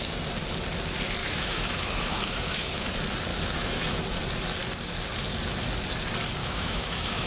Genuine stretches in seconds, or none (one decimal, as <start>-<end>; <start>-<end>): 0.0-1.2; 2.9-3.3; 4.0-6.4

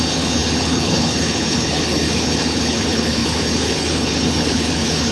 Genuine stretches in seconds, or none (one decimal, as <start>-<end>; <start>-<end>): none

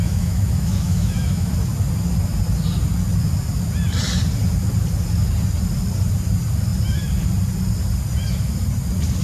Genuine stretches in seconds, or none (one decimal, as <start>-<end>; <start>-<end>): 1.5-9.2

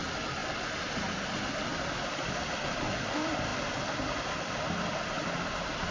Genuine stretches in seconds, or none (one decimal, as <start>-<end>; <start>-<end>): 0.0-5.9

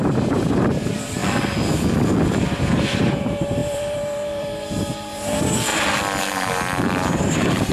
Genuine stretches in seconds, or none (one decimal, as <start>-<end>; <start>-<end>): 1.2-2.2; 5.7-6.2

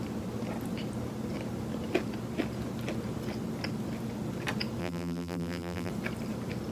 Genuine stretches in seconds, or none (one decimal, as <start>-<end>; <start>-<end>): 0.0-4.8; 5.9-6.7

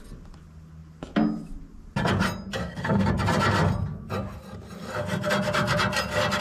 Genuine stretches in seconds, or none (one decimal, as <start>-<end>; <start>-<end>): 0.0-2.6; 3.1-6.4

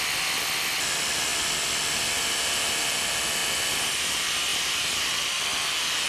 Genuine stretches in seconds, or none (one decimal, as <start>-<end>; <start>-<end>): 0.0-3.4; 4.0-4.5; 5.1-6.1